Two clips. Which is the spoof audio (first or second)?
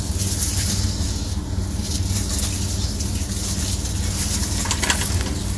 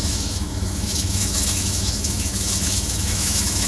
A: second